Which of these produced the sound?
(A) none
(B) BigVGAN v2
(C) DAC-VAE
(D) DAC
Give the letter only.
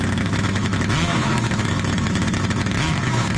C